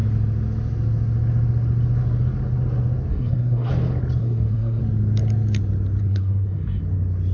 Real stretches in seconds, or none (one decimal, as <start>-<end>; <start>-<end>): 0.0-3.1; 3.7-4.2; 4.8-6.0; 6.8-7.3